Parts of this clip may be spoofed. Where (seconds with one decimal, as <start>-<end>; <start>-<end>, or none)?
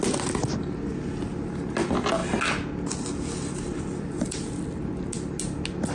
none